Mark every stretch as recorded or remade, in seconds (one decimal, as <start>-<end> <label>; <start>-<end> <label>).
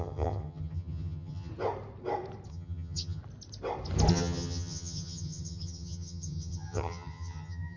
0.0-1.5 remade; 1.5-2.5 recorded; 2.5-3.2 remade; 3.2-4.1 recorded; 4.1-7.8 remade